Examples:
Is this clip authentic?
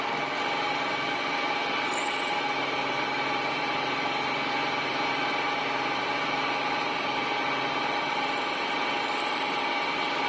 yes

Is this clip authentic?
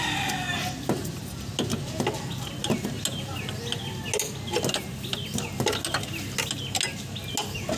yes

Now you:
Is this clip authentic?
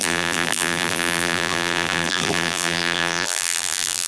no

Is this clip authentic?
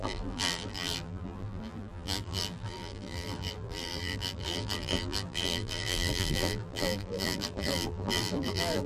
no